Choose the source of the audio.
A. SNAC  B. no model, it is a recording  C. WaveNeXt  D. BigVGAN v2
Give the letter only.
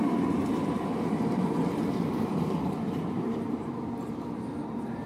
D